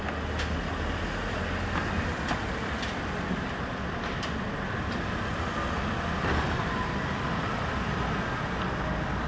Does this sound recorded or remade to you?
recorded